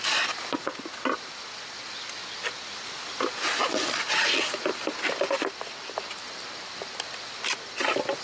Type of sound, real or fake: real